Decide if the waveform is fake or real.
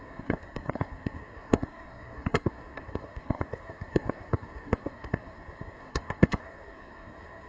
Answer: fake